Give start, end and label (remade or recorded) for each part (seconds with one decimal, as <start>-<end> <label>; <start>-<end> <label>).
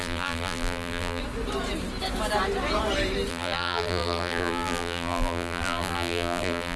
0.0-1.2 remade; 1.2-3.3 recorded; 3.3-6.8 remade